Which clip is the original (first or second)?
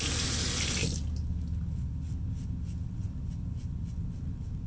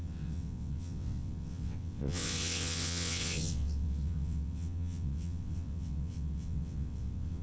first